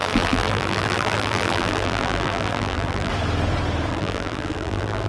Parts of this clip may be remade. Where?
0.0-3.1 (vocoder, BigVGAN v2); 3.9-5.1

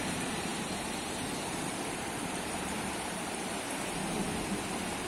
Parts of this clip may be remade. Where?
0.0-4.2 (vocoder, BigVGAN v2)

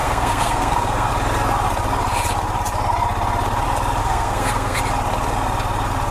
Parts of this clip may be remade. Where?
0.0-1.1 (codec, SNAC); 4.0-4.8

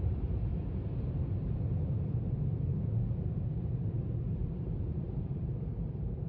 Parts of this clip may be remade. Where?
0.0-0.5 (vocoder, BigVGAN v2); 3.3-6.3

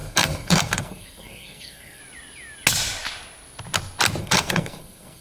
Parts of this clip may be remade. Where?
0.0-2.0 (codec, SNAC); 4.2-5.2